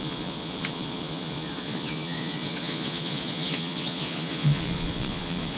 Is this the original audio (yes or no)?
no